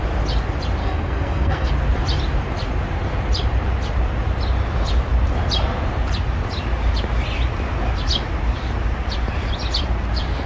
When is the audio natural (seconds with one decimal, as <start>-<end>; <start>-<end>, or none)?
0.0-0.8; 1.7-10.5